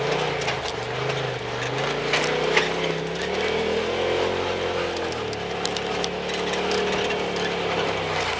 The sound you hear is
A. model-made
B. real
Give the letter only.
B